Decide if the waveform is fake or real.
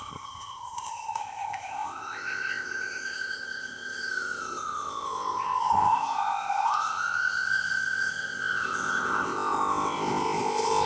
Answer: fake